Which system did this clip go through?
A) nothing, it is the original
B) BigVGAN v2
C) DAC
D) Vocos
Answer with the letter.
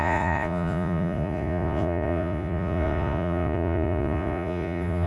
D